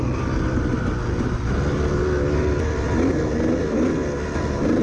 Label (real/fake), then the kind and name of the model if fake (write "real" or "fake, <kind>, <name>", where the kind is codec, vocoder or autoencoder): real